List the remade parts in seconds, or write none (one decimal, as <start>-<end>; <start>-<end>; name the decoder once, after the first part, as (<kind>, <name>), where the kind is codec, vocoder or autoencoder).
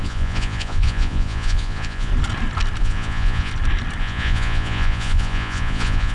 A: 0.0-2.1 (vocoder, Vocos); 2.8-3.5; 4.0-6.1